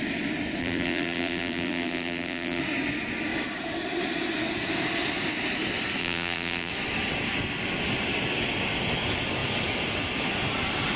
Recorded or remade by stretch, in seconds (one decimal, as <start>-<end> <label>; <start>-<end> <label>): 0.0-0.6 recorded; 0.6-2.6 remade; 2.6-6.0 recorded; 6.0-6.7 remade; 6.7-11.0 recorded